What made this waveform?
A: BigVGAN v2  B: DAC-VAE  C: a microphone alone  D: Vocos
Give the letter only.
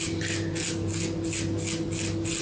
C